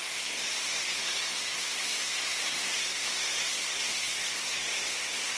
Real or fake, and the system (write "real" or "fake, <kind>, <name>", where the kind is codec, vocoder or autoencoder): fake, codec, SNAC